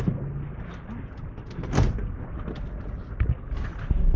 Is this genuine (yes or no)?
yes